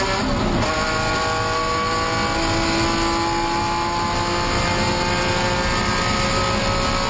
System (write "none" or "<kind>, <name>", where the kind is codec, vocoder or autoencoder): none